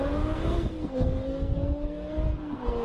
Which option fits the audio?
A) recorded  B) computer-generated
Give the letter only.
B